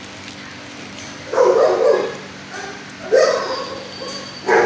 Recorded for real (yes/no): yes